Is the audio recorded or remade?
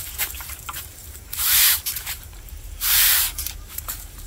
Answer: remade